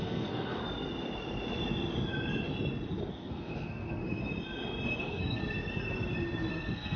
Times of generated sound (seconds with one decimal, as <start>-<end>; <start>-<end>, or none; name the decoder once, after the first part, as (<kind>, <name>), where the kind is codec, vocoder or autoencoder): 0.0-0.6 (codec, SNAC); 3.1-4.0; 5.0-5.4; 6.5-7.0